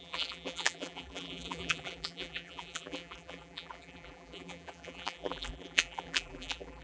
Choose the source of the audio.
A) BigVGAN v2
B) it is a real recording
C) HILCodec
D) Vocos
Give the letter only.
A